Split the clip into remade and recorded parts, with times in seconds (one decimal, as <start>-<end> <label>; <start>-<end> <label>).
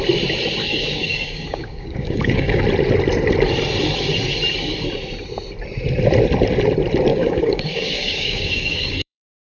0.0-0.6 recorded; 0.6-2.6 remade; 2.6-7.1 recorded; 7.1-9.5 remade